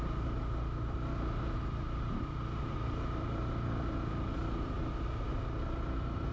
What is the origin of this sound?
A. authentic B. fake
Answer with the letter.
A